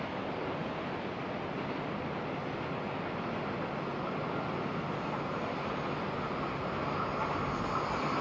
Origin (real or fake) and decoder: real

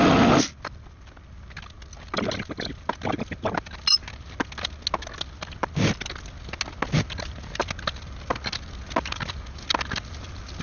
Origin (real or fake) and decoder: real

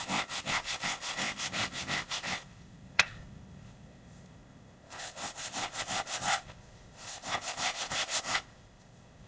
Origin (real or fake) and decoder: fake, codec, ZipCodec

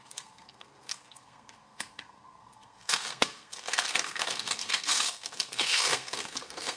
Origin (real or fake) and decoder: fake, codec, SNAC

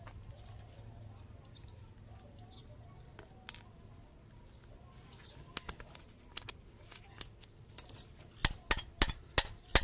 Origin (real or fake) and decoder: real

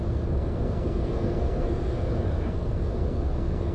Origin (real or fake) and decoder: fake, codec, SNAC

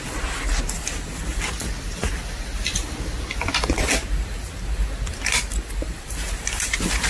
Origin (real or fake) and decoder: real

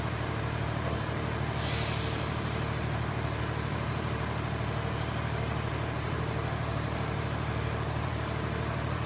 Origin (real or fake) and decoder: fake, vocoder, BigVGAN v2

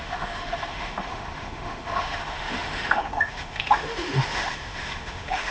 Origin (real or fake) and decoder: fake, autoencoder, DAC-VAE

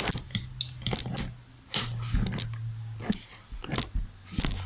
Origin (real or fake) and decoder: real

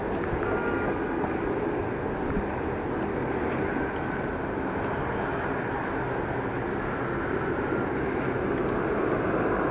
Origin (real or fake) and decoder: real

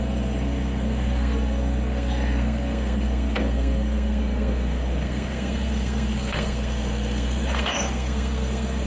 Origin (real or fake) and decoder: fake, codec, SNAC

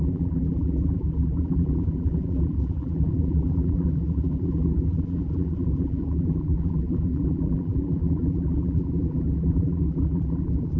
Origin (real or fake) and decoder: fake, vocoder, BigVGAN v2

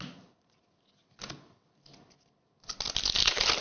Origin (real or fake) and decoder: real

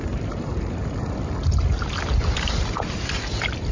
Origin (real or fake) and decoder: real